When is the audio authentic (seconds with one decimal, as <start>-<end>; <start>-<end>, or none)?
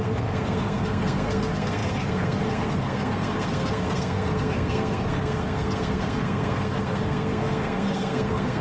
none